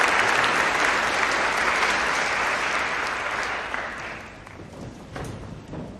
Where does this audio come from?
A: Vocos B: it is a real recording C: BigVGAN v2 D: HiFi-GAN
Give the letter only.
C